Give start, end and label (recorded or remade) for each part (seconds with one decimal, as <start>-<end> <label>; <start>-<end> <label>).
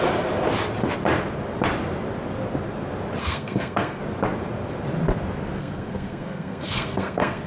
0.0-3.2 recorded; 3.2-4.0 remade; 4.0-5.6 recorded; 5.6-7.5 remade